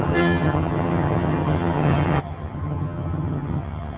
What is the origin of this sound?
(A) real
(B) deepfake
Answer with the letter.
B